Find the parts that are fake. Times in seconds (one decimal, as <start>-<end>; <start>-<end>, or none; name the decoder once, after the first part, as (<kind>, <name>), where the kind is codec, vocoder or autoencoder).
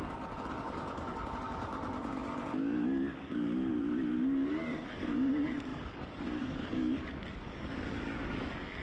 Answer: 0.0-3.7 (codec, DAC); 4.5-8.8